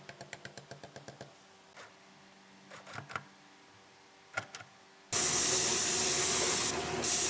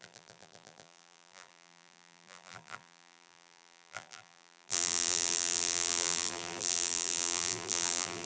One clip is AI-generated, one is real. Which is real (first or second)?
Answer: first